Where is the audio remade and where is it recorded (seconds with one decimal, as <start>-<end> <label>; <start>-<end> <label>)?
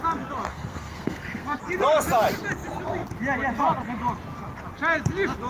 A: 0.0-0.5 recorded; 0.5-1.6 remade; 1.6-5.5 recorded